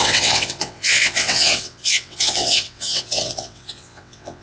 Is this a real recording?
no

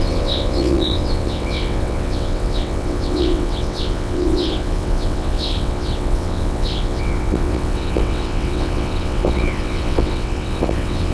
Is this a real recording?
no